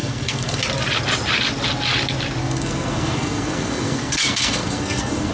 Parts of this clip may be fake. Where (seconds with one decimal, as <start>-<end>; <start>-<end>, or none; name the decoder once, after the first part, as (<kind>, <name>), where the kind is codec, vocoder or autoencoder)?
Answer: 0.0-0.6 (codec, SNAC); 2.4-5.3